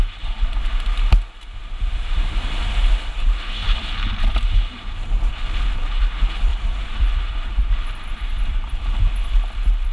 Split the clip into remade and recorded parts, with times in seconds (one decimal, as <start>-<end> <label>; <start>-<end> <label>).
0.0-1.6 recorded; 1.6-5.3 remade; 5.3-6.5 recorded; 6.5-9.3 remade; 9.3-9.9 recorded

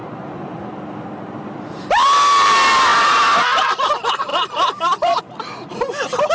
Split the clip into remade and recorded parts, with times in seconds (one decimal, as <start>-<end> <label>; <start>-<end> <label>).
0.0-6.3 recorded

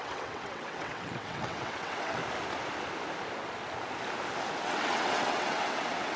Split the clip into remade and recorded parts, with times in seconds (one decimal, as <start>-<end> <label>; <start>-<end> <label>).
0.0-2.2 remade; 2.2-4.6 recorded; 4.6-6.2 remade

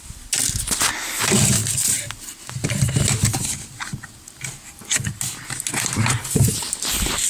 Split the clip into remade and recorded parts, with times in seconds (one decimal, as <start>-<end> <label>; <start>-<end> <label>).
0.0-7.3 recorded

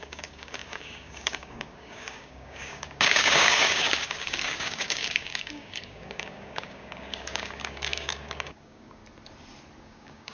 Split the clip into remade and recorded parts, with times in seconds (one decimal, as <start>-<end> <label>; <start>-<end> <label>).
0.0-9.0 remade; 9.0-9.8 recorded; 9.8-10.3 remade